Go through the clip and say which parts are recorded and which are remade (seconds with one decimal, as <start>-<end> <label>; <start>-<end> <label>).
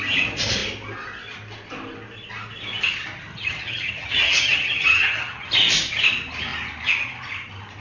0.0-3.3 recorded; 3.3-5.5 remade; 5.5-7.8 recorded